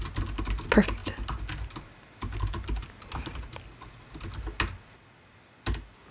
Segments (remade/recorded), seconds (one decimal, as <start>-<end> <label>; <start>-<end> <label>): 0.0-6.1 recorded